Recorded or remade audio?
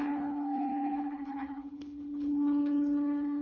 remade